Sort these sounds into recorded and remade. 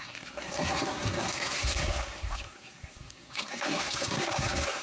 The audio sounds remade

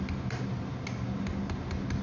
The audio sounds recorded